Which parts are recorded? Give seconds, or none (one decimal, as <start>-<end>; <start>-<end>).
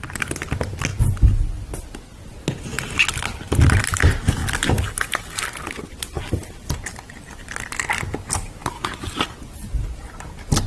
0.0-10.7